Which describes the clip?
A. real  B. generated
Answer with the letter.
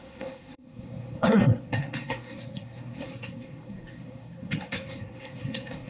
B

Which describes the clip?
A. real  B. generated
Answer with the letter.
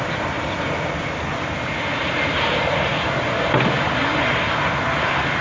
A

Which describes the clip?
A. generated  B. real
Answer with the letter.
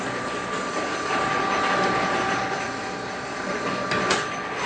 B